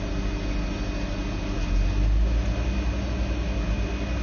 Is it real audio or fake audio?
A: real